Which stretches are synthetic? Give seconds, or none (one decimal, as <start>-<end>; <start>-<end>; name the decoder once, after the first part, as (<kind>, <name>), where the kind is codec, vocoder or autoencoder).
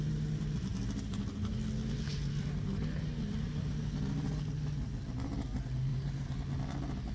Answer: 5.9-6.4 (vocoder, BigVGAN v2)